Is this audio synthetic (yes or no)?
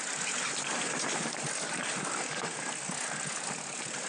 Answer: no